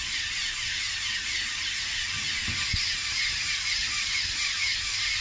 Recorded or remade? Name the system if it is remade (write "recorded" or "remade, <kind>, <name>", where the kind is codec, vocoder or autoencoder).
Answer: recorded